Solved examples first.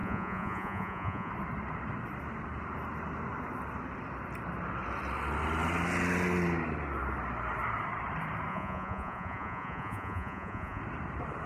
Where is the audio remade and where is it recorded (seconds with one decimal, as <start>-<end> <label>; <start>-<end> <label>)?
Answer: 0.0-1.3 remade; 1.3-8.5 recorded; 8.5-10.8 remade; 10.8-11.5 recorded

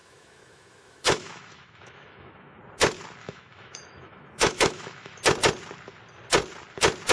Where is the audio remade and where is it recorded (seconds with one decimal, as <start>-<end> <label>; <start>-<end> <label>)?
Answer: 0.0-2.6 remade; 2.6-3.2 recorded; 3.2-5.2 remade; 5.2-7.1 recorded

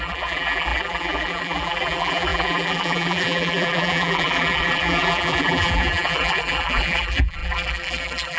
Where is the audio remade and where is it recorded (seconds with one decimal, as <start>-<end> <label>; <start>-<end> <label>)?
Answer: 0.0-8.4 remade

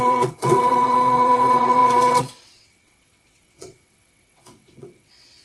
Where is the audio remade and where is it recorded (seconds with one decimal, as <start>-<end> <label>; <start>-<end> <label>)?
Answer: 0.0-5.4 remade

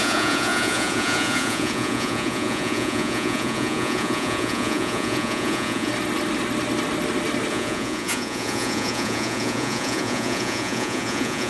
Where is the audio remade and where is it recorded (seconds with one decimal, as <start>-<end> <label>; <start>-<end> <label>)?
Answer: 0.0-5.9 remade; 5.9-7.5 recorded; 7.5-11.5 remade

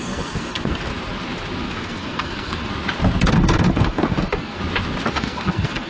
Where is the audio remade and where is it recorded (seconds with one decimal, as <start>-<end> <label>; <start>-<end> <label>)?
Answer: 0.0-0.9 remade; 0.9-1.6 recorded; 1.6-2.7 remade; 2.7-3.3 recorded; 3.3-4.6 remade; 4.6-5.1 recorded; 5.1-5.9 remade

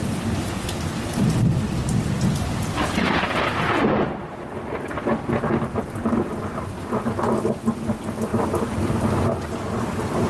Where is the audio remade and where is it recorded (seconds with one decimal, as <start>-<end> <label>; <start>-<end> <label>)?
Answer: 0.0-10.3 recorded